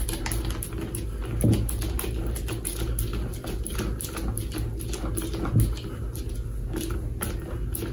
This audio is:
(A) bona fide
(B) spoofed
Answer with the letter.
A